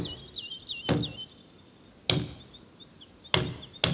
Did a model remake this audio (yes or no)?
no